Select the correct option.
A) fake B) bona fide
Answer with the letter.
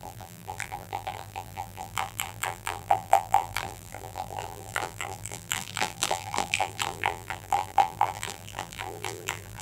A